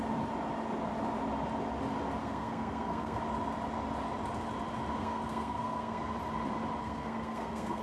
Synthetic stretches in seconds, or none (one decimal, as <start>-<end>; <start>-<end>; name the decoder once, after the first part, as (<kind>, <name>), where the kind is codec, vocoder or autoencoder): 2.2-3.2 (codec, SNAC); 5.0-6.0; 6.8-7.8